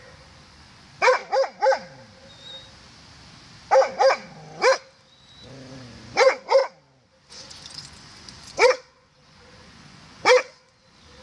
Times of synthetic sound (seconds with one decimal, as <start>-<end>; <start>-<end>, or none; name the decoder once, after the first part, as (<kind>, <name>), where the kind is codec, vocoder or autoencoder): 0.0-1.2 (vocoder, Vocos); 5.7-6.6; 7.3-11.2